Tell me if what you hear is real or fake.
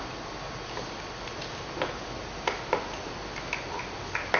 real